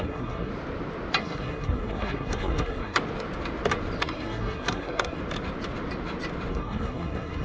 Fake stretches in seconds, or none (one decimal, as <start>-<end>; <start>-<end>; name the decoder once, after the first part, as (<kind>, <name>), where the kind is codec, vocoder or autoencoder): 0.0-0.5 (codec, SNAC); 1.2-3.0; 4.0-5.2; 6.5-7.4